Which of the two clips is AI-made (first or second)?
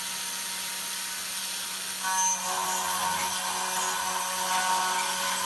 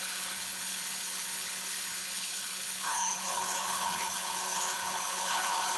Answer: second